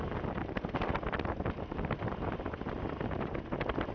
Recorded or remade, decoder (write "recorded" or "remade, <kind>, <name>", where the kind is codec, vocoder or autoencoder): recorded